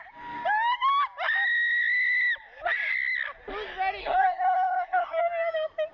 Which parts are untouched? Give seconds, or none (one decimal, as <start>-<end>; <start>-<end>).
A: 0.0-4.0; 5.2-5.9